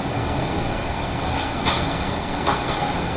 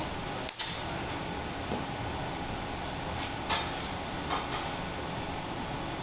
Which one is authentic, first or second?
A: second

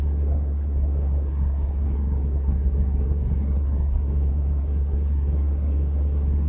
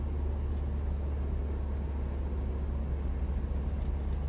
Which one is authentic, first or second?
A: second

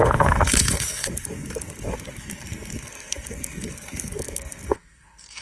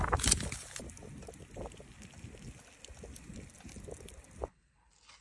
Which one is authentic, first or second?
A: second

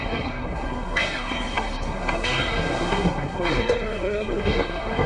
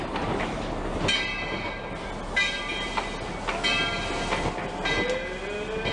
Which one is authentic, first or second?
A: second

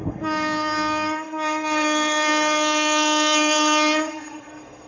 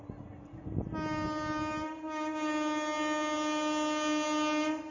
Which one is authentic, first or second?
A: second